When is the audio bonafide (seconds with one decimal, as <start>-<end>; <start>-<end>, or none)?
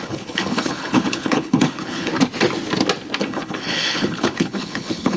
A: 2.1-3.2